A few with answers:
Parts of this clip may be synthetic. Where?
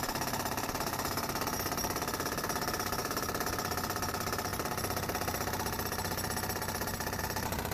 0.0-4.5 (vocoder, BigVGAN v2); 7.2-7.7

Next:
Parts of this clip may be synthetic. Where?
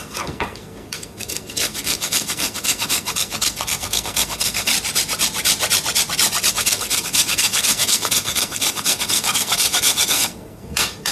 0.0-4.7 (codec, SNAC); 6.5-11.1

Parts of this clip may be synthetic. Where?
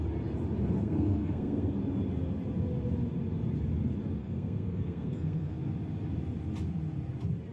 0.7-1.8 (codec, SNAC); 4.2-5.6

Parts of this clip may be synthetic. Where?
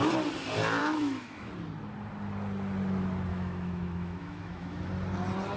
0.8-1.5 (autoencoder, DAC-VAE); 3.3-4.9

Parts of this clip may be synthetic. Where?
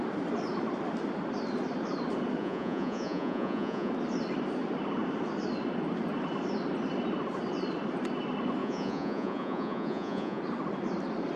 2.4-3.9 (vocoder, Vocos); 8.6-10.4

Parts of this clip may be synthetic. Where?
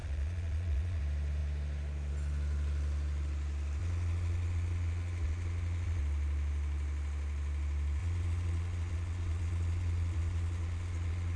0.0-1.0 (vocoder, Vocos); 3.8-6.0; 8.0-11.4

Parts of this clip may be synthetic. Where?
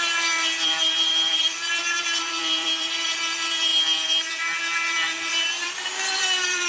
0.0-6.7 (vocoder, BigVGAN v2)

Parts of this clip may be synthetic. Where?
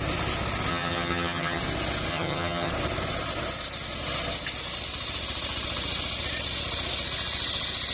0.7-1.6 (vocoder, HiFi-GAN); 2.1-2.7